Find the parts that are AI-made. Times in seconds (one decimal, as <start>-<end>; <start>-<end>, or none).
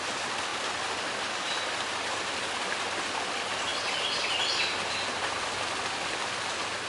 none